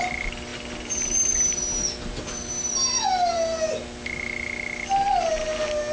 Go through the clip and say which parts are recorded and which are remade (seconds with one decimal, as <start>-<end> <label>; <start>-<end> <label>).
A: 0.0-5.9 recorded